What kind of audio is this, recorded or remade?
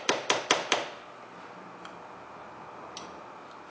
recorded